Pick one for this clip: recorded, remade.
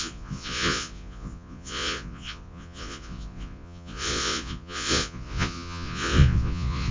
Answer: remade